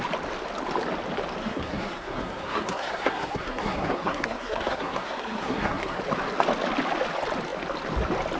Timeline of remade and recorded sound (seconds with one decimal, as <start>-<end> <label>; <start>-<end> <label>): 0.0-1.4 recorded; 1.4-6.0 remade; 6.0-8.4 recorded